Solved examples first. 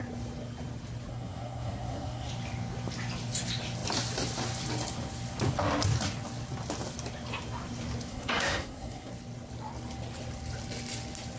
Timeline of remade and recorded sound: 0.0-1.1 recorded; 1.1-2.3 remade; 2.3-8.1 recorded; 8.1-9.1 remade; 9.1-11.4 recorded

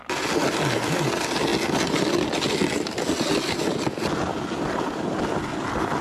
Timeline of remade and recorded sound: 0.0-6.0 recorded

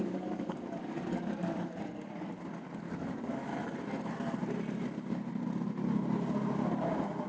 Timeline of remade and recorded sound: 0.0-3.5 remade; 3.5-7.3 recorded

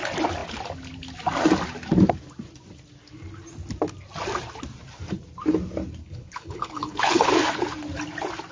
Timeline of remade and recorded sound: 0.0-6.0 recorded; 6.0-7.3 remade; 7.3-8.5 recorded

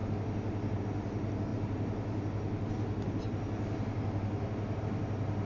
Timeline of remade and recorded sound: 0.0-5.5 recorded

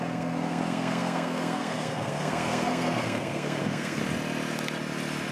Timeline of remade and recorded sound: 0.0-4.0 remade; 4.0-5.3 recorded